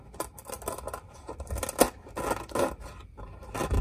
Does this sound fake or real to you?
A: real